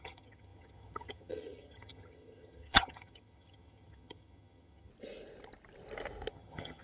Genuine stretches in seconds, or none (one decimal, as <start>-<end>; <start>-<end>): 4.9-6.3